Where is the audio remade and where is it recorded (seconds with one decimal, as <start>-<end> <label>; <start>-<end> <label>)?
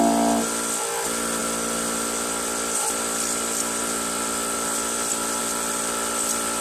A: 0.0-1.4 recorded; 1.4-5.4 remade; 5.4-6.6 recorded